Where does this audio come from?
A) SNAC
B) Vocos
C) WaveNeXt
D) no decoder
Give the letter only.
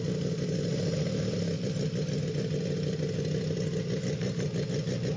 D